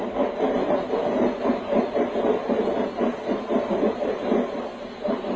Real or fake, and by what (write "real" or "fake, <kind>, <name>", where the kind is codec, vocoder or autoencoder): real